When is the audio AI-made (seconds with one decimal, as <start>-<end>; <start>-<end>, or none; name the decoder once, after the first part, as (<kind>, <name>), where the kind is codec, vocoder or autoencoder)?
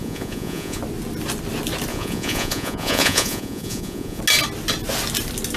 0.0-0.8 (vocoder, Vocos); 1.9-4.2